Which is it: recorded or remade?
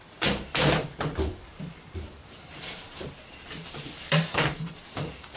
remade